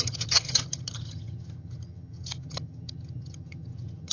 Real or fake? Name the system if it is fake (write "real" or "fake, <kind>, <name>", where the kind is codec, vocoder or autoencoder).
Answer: fake, vocoder, HiFi-GAN